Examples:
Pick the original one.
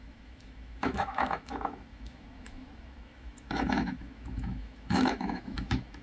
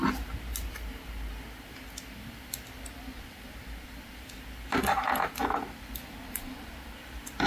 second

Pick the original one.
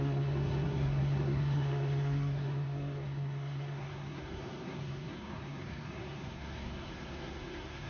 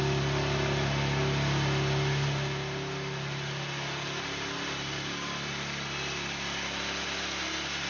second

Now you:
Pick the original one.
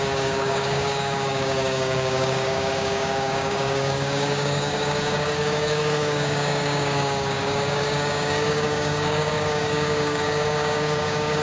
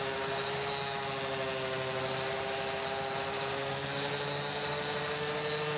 second